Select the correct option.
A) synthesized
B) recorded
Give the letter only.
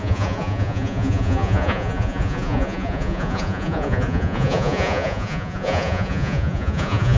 A